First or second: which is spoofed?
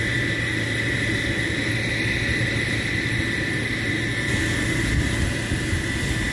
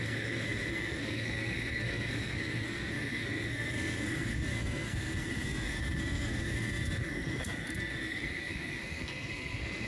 second